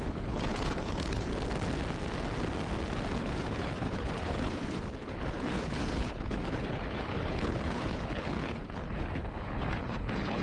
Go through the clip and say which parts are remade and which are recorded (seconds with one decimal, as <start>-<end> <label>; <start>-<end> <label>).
0.0-1.3 remade; 1.3-3.2 recorded; 3.2-10.4 remade